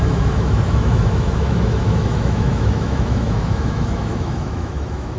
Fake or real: fake